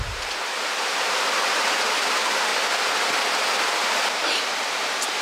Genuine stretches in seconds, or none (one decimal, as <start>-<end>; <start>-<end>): 2.5-4.5